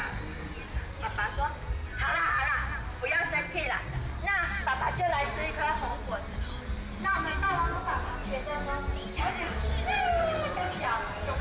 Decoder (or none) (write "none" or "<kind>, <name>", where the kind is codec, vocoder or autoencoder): none